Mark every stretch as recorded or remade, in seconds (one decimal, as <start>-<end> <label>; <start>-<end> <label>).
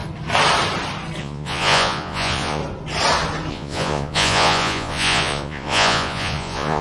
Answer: 0.0-1.2 recorded; 1.2-2.6 remade; 2.6-3.5 recorded; 3.5-6.8 remade